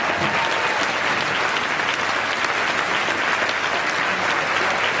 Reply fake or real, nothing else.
real